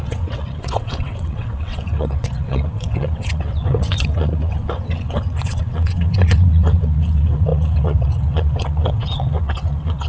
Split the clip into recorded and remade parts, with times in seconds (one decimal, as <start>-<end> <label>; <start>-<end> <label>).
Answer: 0.0-10.1 remade